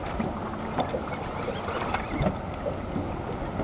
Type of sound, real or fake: real